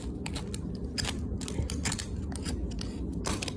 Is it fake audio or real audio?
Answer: real